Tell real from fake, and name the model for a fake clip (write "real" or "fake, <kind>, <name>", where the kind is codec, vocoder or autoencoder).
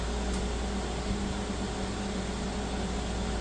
real